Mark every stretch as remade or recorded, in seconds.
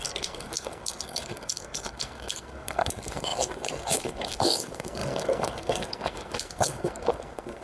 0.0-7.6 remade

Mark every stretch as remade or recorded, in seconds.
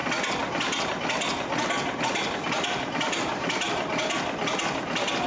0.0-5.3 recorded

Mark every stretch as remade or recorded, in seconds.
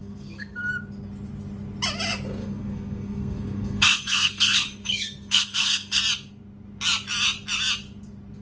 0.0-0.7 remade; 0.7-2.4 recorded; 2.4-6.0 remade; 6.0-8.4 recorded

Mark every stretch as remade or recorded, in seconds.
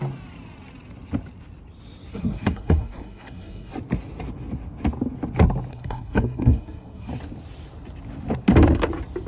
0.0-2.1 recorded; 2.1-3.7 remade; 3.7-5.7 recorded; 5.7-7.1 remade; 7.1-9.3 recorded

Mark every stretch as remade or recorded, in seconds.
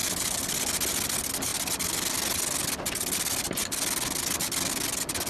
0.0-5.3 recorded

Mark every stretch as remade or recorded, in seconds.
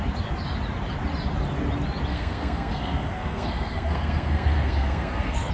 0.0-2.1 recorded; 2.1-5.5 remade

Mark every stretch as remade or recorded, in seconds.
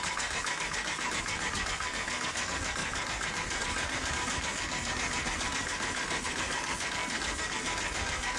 0.0-8.4 remade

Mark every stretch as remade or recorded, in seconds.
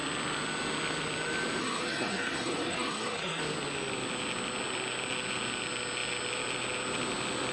0.0-1.6 recorded; 1.6-3.4 remade; 3.4-7.5 recorded